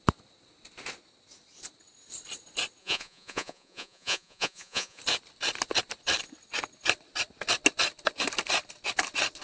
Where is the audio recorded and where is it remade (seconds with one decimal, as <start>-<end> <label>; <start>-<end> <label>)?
0.0-2.8 recorded; 2.8-5.0 remade; 5.0-9.4 recorded